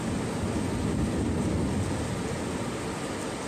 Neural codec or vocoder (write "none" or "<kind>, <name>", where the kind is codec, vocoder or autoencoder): none